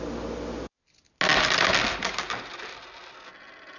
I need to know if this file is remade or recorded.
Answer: recorded